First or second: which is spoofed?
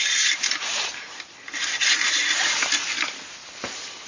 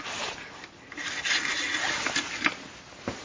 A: first